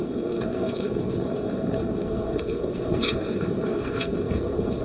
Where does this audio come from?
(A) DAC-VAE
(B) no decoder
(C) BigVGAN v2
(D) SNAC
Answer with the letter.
D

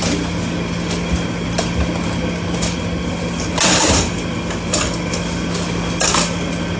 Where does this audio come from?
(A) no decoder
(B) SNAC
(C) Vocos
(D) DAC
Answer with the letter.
A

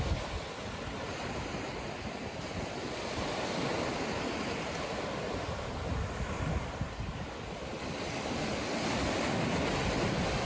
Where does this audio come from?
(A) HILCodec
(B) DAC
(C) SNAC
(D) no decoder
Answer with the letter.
D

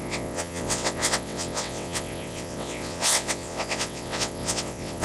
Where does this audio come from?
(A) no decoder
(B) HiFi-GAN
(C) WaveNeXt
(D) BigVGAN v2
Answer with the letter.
C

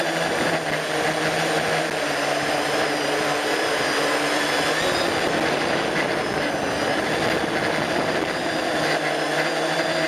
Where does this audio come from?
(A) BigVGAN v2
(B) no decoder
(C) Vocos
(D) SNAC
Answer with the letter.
B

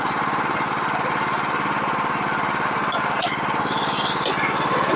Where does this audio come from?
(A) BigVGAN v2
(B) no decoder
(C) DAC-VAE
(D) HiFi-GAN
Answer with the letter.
B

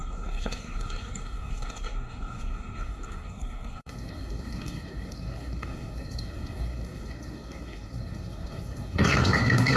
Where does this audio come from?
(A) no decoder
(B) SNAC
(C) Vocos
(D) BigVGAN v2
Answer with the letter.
B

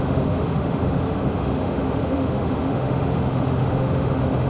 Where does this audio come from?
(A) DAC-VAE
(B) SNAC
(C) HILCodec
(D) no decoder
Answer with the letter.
A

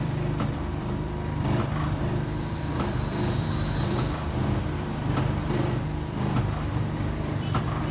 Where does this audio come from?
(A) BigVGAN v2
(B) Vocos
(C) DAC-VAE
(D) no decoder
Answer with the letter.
A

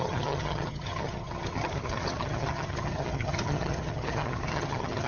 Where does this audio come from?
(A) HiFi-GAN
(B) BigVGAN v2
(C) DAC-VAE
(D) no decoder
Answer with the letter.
A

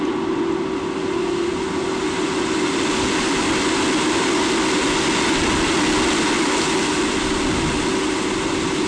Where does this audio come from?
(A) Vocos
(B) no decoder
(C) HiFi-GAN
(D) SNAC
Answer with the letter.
B